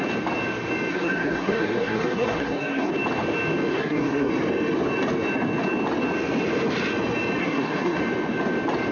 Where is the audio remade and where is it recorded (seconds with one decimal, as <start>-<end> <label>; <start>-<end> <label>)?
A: 0.0-0.9 recorded; 0.9-2.9 remade; 2.9-3.7 recorded; 3.7-4.3 remade; 4.3-7.4 recorded; 7.4-8.0 remade; 8.0-8.9 recorded